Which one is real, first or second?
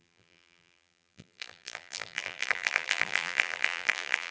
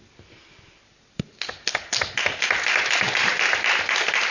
second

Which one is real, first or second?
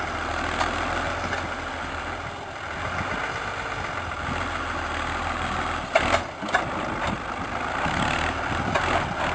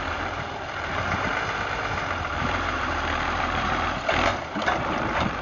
first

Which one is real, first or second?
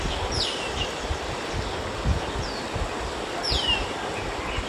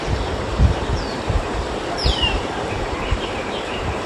first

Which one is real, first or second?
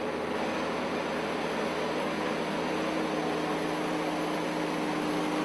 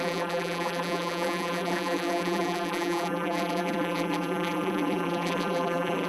first